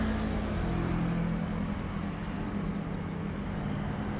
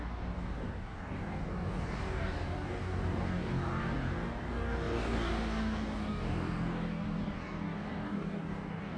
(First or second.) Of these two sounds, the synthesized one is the second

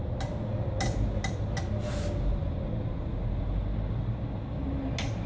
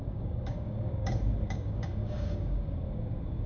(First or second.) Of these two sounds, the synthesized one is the second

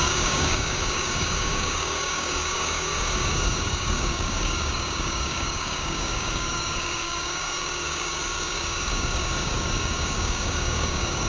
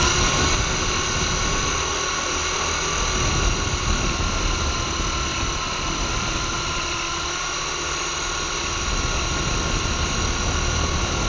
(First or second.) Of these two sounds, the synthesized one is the first